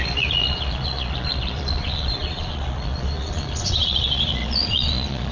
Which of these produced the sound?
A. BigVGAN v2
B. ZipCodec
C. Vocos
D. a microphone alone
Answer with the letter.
C